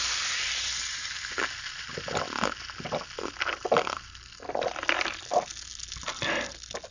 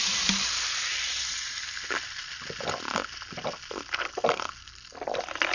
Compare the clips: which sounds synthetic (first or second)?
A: second